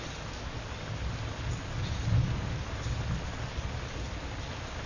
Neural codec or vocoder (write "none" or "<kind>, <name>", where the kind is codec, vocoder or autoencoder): none